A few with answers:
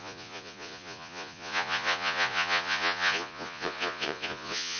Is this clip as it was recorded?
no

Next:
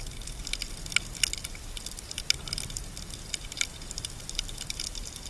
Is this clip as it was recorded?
yes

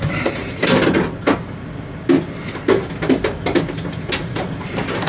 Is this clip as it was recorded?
yes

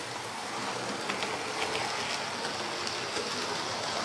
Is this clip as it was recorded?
yes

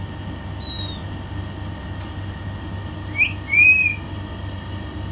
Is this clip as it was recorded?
yes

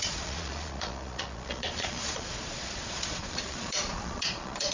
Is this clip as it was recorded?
no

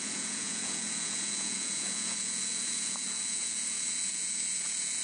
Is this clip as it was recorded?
no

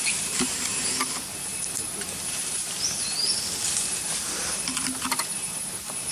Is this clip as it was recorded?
yes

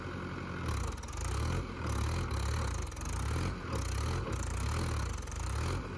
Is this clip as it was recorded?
yes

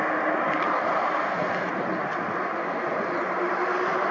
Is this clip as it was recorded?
yes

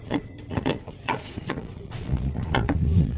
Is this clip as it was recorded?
no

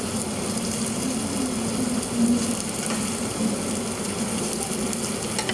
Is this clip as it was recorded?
yes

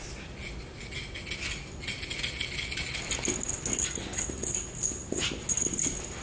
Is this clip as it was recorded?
yes